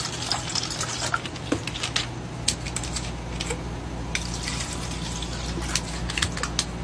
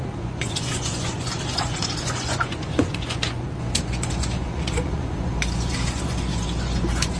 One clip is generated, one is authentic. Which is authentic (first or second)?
first